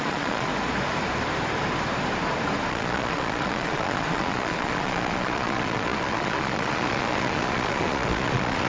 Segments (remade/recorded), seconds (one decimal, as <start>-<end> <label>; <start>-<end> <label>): 0.0-0.5 remade; 0.5-2.7 recorded; 2.7-8.7 remade